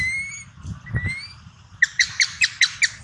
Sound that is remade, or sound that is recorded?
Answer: recorded